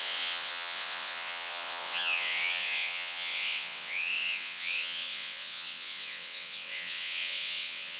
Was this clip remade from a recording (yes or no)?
yes